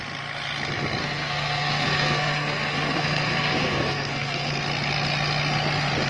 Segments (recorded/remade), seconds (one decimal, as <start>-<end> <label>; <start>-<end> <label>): 0.0-1.0 recorded; 1.0-4.5 remade; 4.5-6.1 recorded